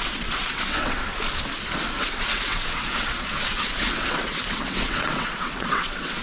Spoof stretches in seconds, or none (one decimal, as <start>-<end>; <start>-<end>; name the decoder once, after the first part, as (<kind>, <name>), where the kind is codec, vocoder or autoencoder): 0.0-1.0 (vocoder, WaveNeXt); 2.0-6.2